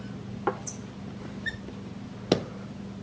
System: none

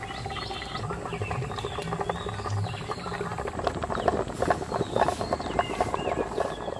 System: none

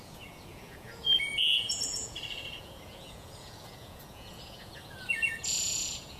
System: vocoder, Vocos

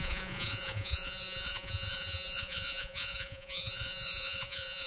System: vocoder, Vocos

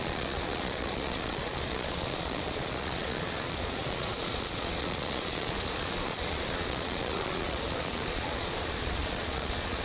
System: vocoder, Vocos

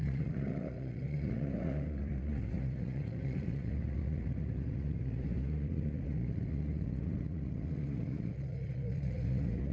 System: vocoder, Vocos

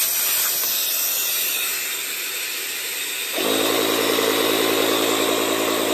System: none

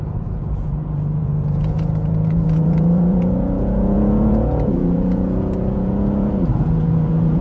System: vocoder, Vocos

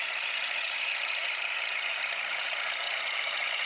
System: vocoder, Vocos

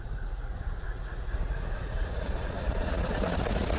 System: vocoder, Vocos